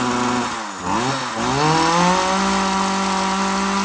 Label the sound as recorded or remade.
recorded